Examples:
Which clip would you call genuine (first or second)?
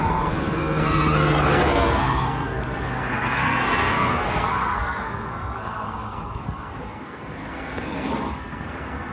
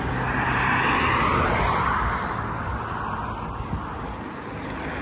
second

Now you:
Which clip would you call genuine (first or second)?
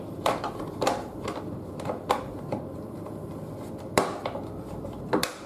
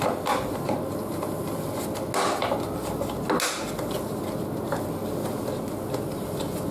second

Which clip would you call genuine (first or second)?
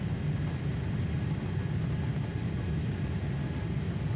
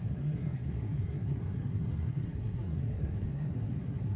first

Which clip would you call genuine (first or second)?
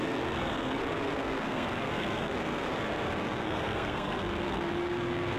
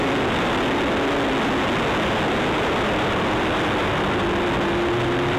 second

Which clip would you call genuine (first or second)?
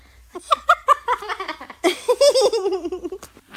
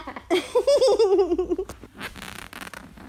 second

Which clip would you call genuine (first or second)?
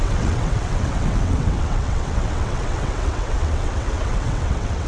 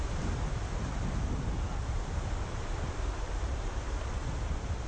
second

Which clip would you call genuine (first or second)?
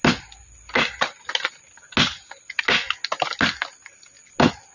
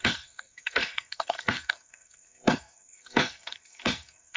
first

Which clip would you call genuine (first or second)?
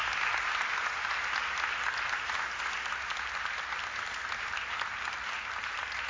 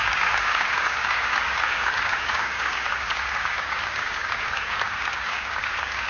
first